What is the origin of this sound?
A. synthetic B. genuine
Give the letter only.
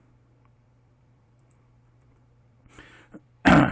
A